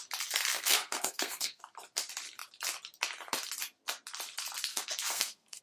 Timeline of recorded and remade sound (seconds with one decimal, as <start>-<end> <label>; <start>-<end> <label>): 0.0-0.5 recorded; 0.5-1.6 remade; 1.6-4.7 recorded; 4.7-5.6 remade